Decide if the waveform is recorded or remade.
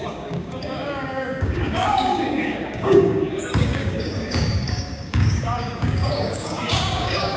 remade